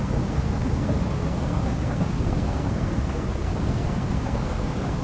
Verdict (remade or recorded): remade